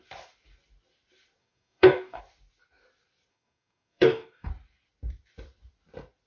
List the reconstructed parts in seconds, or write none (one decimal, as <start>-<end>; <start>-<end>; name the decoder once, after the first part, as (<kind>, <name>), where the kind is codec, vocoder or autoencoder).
1.4-2.2 (codec, DAC); 3.3-4.5